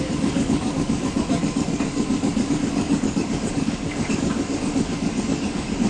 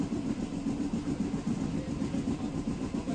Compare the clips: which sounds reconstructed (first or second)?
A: first